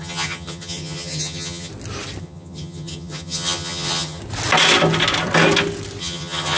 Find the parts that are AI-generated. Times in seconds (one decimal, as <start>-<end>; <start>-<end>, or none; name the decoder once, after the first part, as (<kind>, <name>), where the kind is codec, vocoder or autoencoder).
0.0-1.7 (vocoder, HiFi-GAN); 2.2-4.2; 6.0-6.6